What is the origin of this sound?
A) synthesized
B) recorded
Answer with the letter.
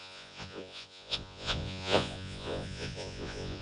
A